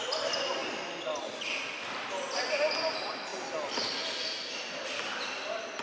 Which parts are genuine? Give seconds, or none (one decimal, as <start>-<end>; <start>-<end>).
0.0-5.8